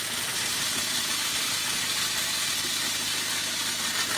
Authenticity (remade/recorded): recorded